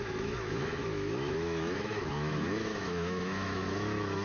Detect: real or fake fake